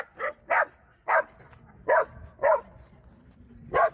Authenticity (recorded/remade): recorded